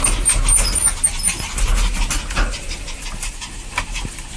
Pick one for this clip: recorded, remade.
recorded